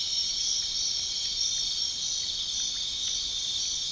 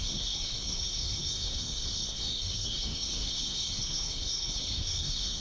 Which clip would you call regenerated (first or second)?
second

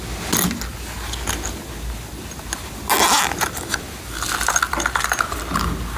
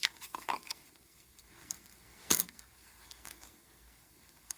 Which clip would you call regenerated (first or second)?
second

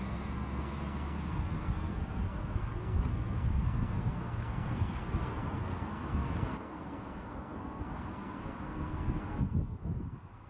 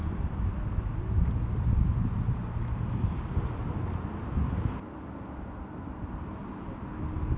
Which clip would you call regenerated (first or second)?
first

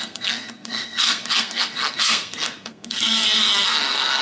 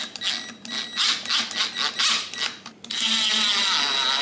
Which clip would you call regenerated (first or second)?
first